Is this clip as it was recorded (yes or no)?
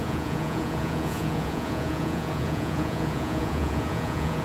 no